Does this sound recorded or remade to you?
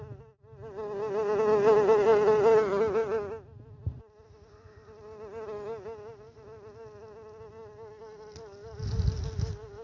recorded